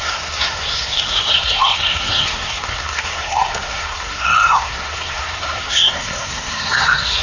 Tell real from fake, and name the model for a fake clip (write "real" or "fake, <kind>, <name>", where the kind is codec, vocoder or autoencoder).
fake, codec, SNAC